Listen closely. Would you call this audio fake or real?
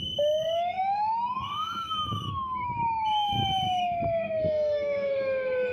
fake